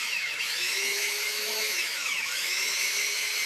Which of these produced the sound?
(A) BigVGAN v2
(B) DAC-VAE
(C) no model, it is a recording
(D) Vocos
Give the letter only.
B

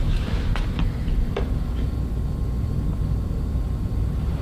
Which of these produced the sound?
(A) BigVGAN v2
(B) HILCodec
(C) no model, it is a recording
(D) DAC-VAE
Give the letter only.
A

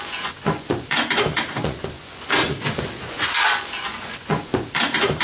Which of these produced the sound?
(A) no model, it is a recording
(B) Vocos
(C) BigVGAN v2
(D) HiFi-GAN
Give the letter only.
B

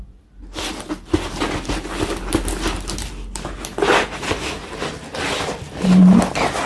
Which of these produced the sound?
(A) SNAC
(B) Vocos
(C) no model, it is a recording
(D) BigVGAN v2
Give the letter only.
C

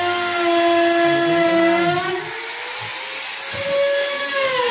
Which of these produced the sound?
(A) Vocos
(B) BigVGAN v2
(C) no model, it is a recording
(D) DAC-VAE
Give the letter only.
C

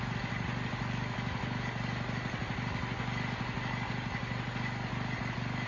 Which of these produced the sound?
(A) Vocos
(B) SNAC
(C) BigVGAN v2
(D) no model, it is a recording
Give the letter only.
D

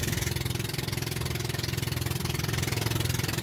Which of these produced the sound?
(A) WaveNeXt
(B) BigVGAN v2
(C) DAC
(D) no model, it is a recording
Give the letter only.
B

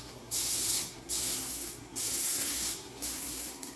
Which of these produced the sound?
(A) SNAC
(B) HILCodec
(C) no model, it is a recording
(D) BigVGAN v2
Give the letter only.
A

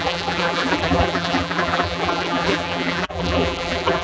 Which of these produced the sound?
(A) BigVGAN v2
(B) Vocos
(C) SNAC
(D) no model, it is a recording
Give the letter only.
A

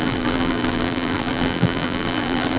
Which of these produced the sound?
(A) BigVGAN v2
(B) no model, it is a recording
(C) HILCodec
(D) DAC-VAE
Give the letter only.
A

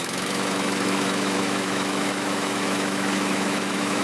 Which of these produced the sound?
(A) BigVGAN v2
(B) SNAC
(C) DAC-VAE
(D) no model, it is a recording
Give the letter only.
C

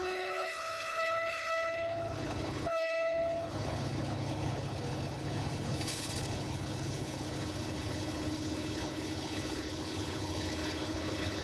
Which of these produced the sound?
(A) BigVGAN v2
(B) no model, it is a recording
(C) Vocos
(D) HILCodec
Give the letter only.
D